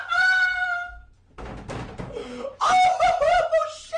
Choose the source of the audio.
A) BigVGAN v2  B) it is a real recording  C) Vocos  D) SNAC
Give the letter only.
B